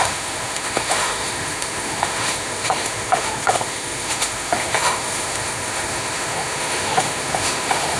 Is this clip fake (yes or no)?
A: yes